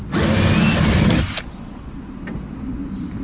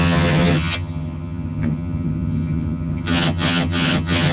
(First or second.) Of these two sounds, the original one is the first